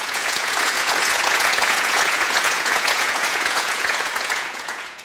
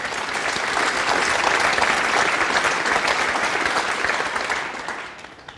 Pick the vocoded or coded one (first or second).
first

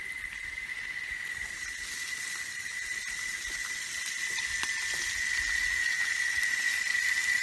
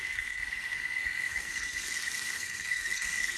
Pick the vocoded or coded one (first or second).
second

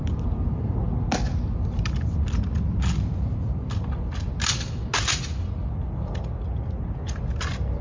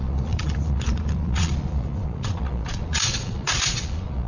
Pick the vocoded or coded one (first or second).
second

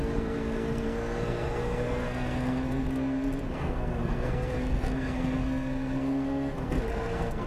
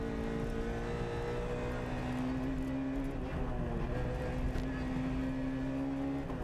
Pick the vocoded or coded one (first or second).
first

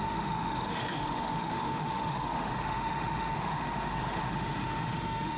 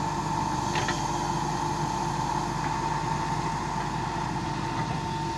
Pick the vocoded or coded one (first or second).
first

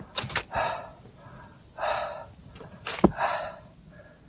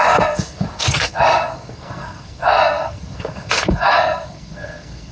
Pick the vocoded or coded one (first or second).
second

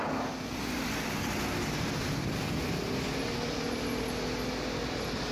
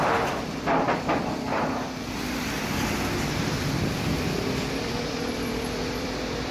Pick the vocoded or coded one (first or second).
second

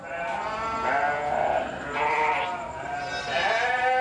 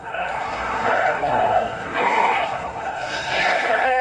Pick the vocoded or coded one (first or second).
second